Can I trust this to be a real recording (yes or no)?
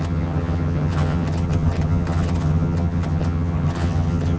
no